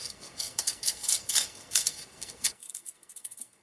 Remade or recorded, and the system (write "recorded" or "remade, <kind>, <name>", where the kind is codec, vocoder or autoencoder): remade, codec, SNAC